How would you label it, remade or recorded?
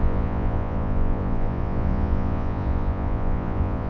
remade